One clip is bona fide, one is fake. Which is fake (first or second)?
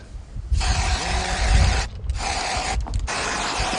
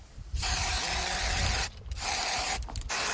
second